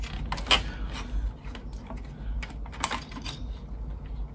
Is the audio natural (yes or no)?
yes